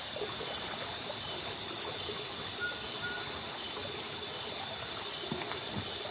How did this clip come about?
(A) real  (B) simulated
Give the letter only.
A